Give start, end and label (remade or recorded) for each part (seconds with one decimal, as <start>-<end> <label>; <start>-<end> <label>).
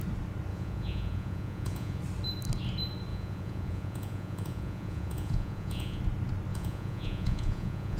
0.0-0.5 recorded; 0.5-2.0 remade; 2.0-3.1 recorded; 3.1-6.0 remade; 6.0-6.5 recorded; 6.5-8.0 remade